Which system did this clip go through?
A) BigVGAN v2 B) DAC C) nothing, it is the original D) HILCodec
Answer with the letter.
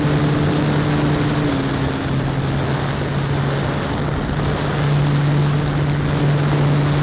C